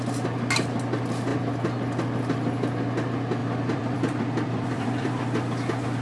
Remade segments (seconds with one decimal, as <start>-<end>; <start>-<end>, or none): 3.4-5.2